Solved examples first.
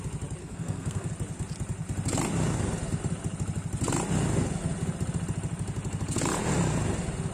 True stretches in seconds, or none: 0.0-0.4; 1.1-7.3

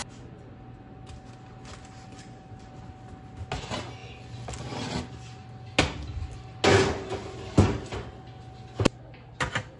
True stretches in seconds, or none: 0.0-9.8